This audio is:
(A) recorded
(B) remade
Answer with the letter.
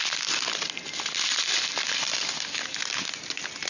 A